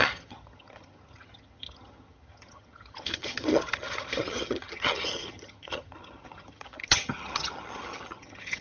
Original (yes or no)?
no